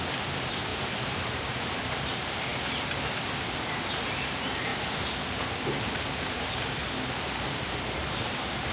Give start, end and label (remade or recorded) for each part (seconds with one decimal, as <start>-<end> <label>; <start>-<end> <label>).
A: 0.0-4.7 remade; 4.7-5.6 recorded; 5.6-6.8 remade; 6.8-7.5 recorded; 7.5-8.7 remade